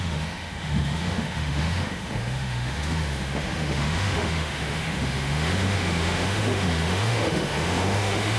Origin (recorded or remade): remade